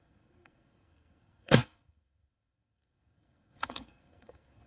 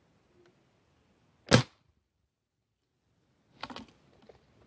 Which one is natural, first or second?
second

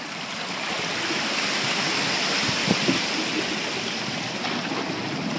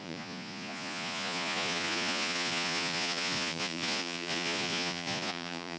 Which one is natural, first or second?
first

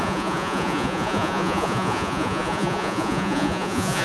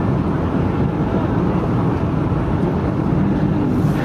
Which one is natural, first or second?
second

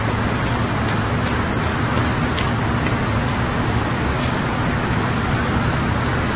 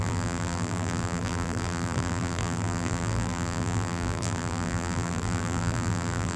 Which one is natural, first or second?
first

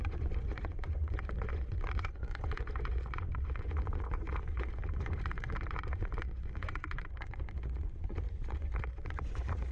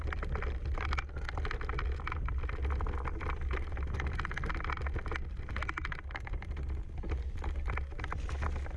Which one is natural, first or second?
second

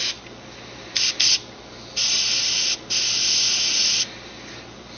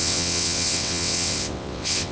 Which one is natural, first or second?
first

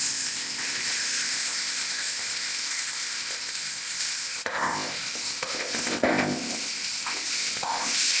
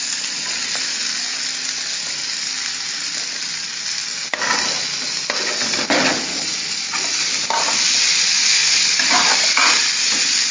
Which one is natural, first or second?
second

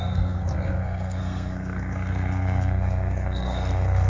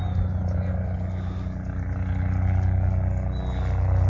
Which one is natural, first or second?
second